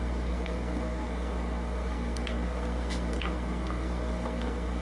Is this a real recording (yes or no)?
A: no